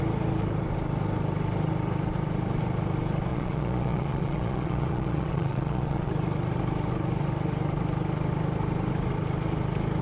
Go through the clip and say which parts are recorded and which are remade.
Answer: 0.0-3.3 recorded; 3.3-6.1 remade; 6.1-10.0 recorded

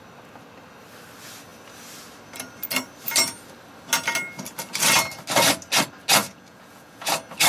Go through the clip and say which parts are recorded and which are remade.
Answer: 0.0-6.2 recorded; 6.2-7.1 remade; 7.1-7.5 recorded

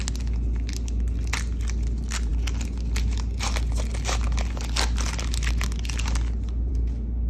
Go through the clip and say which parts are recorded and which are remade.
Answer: 0.0-7.3 recorded

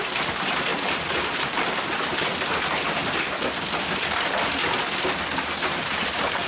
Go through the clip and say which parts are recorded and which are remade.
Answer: 0.0-3.0 remade; 3.0-5.8 recorded; 5.8-6.5 remade

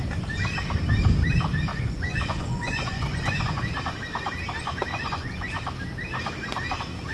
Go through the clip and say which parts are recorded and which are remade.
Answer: 0.0-1.7 recorded; 1.7-3.7 remade; 3.7-4.9 recorded; 4.9-5.5 remade; 5.5-7.1 recorded

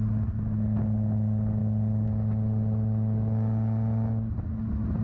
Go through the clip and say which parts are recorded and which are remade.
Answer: 0.0-5.0 recorded

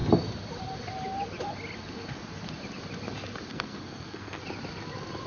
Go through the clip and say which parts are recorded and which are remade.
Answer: 0.0-3.5 recorded; 3.5-4.4 remade; 4.4-5.3 recorded

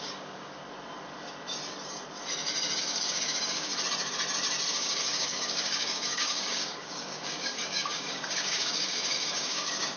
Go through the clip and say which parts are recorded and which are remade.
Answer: 0.0-0.6 remade; 0.6-2.8 recorded; 2.8-3.7 remade; 3.7-4.7 recorded; 4.7-10.0 remade